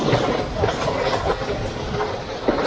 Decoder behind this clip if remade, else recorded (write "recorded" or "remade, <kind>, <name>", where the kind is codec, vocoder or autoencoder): recorded